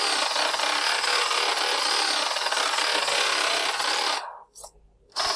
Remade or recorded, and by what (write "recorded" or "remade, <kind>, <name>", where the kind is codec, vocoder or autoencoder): recorded